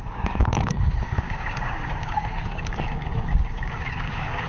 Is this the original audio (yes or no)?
no